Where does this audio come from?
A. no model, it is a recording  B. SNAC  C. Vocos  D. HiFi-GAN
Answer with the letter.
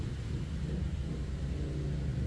A